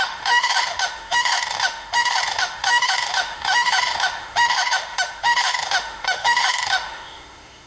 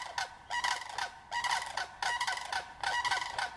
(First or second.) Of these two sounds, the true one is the second